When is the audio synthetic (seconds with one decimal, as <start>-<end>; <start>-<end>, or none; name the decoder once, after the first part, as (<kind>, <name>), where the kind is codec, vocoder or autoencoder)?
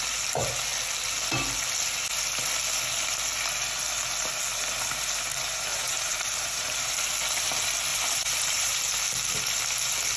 5.3-6.9 (vocoder, BigVGAN v2); 7.9-8.8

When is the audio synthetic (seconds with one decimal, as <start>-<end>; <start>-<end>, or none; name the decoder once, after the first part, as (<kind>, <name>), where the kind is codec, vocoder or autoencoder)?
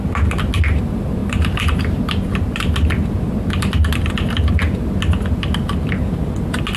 1.2-4.6 (vocoder, BigVGAN v2)